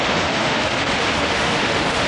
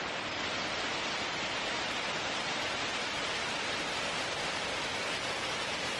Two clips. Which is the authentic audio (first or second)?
second